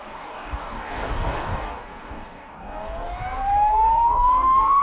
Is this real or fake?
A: fake